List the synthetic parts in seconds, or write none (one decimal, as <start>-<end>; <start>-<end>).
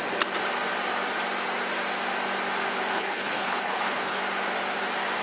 2.9-4.2